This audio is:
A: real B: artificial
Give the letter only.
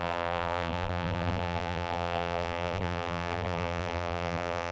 B